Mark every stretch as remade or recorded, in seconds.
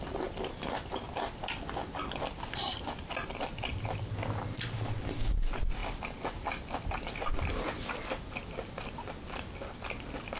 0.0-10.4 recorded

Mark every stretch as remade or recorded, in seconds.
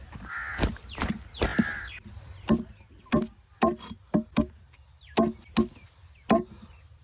0.0-7.0 recorded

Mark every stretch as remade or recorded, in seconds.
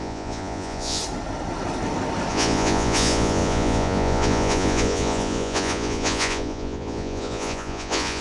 0.0-1.0 remade; 1.0-2.3 recorded; 2.3-8.2 remade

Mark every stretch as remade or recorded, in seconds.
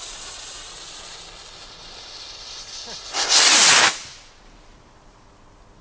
0.0-5.8 recorded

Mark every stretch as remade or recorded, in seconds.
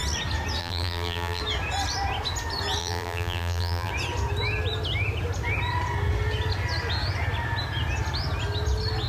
0.0-0.6 recorded; 0.6-1.4 remade; 1.4-2.8 recorded; 2.8-3.9 remade; 3.9-9.1 recorded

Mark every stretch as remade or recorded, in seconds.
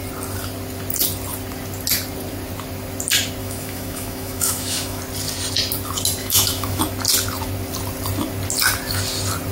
0.0-3.4 recorded; 3.4-5.0 remade; 5.0-6.2 recorded; 6.2-6.8 remade; 6.8-9.5 recorded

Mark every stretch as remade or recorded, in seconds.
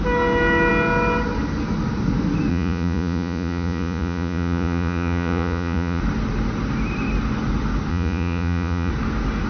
0.0-2.5 recorded; 2.5-6.0 remade; 6.0-7.9 recorded; 7.9-8.9 remade; 8.9-9.5 recorded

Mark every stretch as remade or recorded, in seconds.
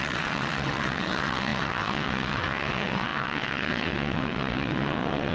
0.0-5.3 remade